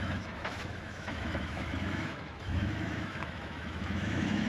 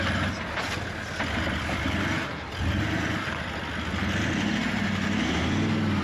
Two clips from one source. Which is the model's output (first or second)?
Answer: first